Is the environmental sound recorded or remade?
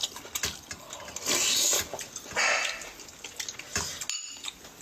recorded